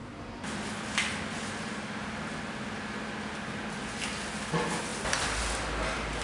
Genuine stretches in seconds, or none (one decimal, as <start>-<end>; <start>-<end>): 0.0-6.2